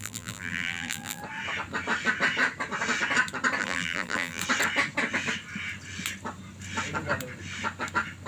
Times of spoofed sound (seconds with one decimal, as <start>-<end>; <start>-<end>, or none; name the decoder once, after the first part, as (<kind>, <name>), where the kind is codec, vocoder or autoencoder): 0.0-1.2 (vocoder, BigVGAN v2); 3.6-4.4